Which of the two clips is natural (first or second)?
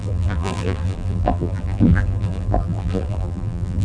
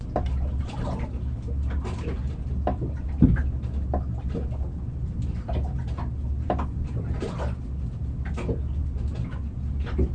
second